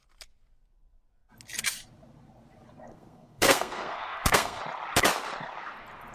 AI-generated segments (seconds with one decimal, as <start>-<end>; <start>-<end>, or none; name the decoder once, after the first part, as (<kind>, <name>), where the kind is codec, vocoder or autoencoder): 2.9-4.6 (codec, SNAC)